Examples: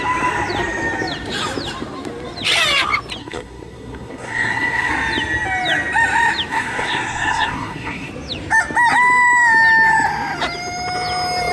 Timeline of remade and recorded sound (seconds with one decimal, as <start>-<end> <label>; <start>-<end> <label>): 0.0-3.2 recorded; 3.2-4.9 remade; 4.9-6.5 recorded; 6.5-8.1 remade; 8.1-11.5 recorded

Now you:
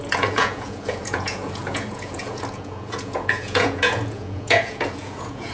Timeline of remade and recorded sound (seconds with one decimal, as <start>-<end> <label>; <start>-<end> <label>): 0.0-5.5 remade

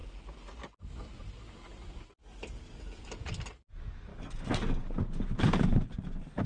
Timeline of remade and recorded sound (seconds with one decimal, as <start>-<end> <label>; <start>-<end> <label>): 0.0-2.2 recorded; 2.2-3.0 remade; 3.0-4.1 recorded; 4.1-5.0 remade; 5.0-6.5 recorded

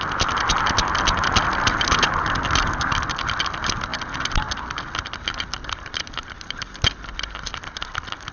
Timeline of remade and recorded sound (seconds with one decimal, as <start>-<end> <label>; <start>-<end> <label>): 0.0-8.3 recorded

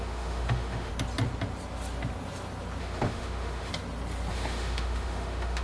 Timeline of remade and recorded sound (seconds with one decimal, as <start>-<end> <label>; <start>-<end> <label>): 0.0-0.9 remade; 0.9-2.8 recorded; 2.8-3.7 remade; 3.7-4.3 recorded; 4.3-5.6 remade

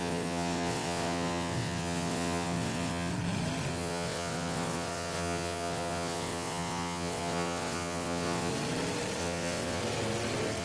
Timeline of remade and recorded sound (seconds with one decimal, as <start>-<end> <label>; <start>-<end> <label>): 0.0-3.1 remade; 3.1-3.7 recorded; 3.7-8.5 remade; 8.5-9.2 recorded; 9.2-9.8 remade; 9.8-10.6 recorded

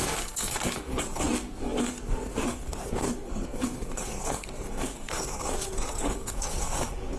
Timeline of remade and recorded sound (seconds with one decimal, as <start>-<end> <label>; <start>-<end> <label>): 0.0-7.2 remade

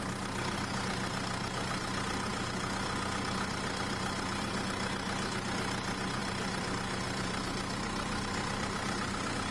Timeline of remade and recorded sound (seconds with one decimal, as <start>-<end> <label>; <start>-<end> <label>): 0.0-6.2 recorded; 6.2-9.5 remade